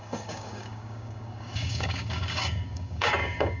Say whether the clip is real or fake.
fake